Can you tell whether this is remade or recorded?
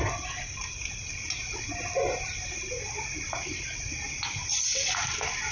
recorded